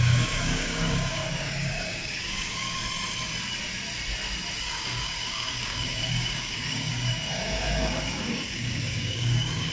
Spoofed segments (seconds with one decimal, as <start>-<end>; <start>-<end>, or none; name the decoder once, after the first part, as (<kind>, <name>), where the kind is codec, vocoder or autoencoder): 0.0-2.8 (codec, DAC); 4.6-9.7